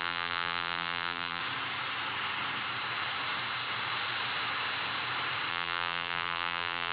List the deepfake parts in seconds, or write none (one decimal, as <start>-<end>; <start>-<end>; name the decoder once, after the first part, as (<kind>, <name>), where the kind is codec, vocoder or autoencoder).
0.0-1.4 (vocoder, BigVGAN v2); 5.5-6.9